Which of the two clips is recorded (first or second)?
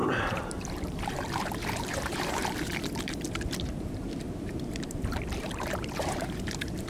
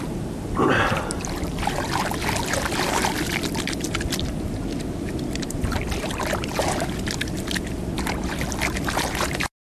second